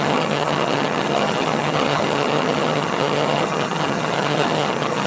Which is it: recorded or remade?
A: remade